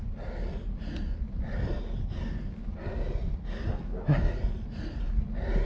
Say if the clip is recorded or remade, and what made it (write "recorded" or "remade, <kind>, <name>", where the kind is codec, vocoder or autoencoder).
recorded